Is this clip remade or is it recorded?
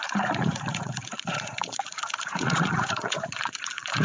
remade